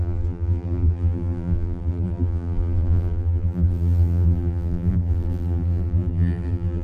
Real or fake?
fake